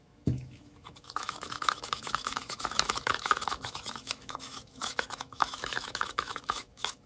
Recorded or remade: remade